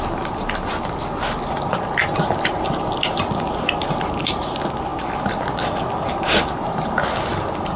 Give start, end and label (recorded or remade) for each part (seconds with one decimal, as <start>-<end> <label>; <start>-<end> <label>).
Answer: 0.0-7.8 recorded